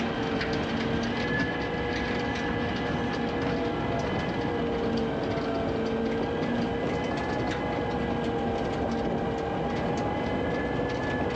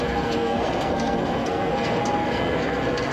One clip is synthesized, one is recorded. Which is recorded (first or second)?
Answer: first